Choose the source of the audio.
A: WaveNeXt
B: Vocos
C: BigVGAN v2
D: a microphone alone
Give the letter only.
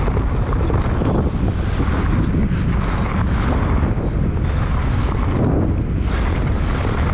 D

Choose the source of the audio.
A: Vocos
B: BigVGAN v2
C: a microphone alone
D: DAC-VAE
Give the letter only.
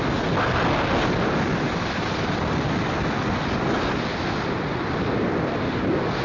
C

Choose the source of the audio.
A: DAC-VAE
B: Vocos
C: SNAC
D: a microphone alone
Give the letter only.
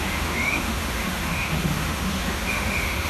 A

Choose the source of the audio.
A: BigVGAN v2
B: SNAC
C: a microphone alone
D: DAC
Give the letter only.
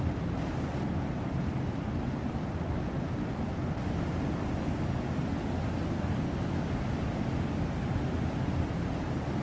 C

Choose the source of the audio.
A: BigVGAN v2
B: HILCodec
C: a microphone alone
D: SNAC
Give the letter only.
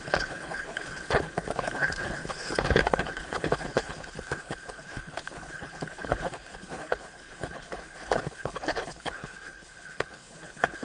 B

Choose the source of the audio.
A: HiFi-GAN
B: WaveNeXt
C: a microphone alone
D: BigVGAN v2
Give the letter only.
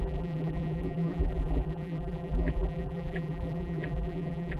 D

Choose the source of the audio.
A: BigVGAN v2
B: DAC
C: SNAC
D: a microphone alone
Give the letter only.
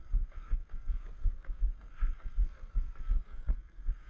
C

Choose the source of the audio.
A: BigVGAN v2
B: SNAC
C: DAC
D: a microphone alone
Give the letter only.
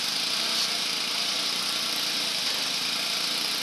D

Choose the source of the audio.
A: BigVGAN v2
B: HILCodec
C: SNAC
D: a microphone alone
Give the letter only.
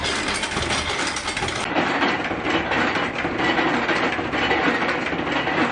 D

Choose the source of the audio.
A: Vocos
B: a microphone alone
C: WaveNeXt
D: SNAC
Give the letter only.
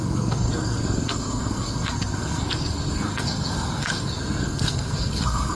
D